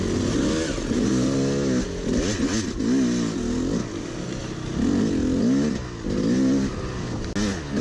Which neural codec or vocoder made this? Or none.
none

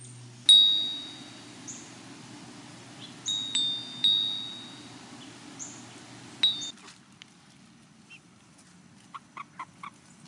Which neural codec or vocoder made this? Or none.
none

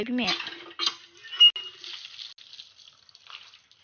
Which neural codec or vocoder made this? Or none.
none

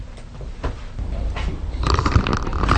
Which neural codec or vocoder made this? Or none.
none